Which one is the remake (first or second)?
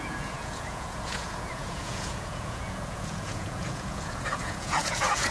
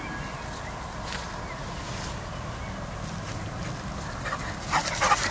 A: first